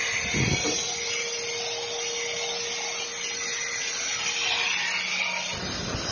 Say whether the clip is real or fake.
real